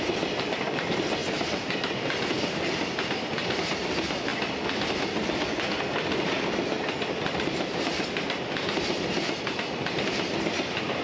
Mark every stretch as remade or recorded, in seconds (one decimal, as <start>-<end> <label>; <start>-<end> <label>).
0.0-1.2 remade; 1.2-2.7 recorded; 2.7-4.3 remade; 4.3-7.1 recorded; 7.1-11.0 remade